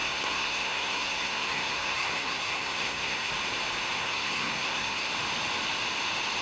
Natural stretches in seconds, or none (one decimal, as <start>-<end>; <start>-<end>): 3.3-4.0; 5.1-6.4